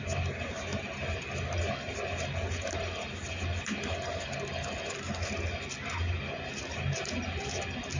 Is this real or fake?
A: real